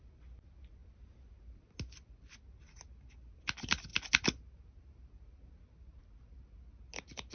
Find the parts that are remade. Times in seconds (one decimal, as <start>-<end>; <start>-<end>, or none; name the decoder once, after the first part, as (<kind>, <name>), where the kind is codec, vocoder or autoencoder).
none